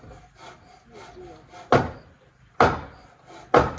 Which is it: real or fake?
real